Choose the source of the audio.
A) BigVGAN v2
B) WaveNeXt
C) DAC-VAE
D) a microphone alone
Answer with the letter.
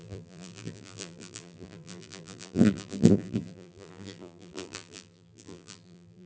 A